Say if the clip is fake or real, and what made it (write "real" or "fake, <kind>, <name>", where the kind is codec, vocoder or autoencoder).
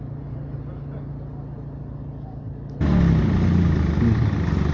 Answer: real